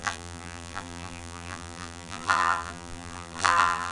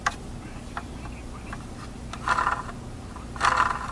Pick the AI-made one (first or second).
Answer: first